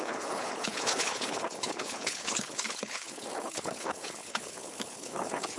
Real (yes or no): no